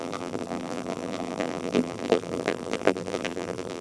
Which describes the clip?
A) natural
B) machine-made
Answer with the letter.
B